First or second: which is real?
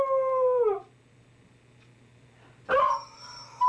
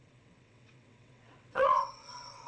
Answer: first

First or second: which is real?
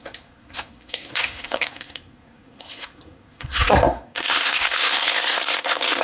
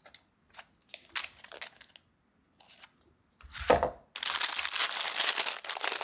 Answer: second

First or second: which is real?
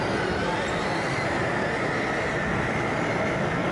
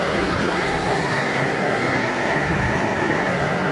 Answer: first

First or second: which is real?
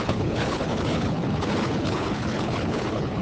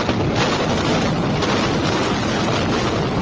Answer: second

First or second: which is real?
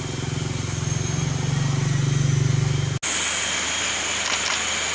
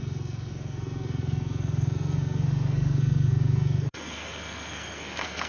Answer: first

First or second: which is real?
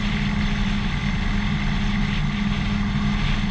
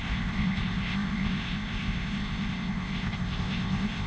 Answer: first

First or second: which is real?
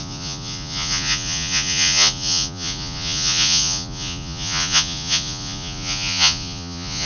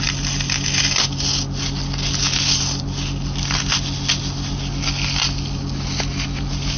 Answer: second